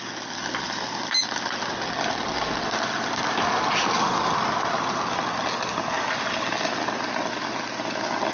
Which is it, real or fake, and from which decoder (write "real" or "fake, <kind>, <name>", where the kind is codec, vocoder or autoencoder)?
real